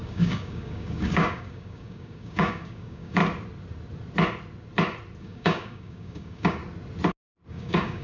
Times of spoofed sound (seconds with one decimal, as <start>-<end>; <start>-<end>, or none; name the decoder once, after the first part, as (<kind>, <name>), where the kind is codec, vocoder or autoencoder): 0.0-3.2 (codec, DAC); 5.2-6.6; 7.5-8.0